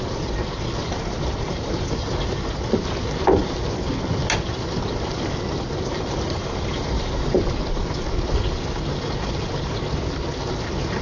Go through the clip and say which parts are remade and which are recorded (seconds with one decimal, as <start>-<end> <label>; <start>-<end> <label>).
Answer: 0.0-0.8 recorded; 0.8-1.9 remade; 1.9-5.9 recorded; 5.9-7.4 remade; 7.4-11.0 recorded